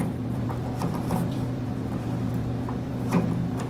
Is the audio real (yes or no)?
no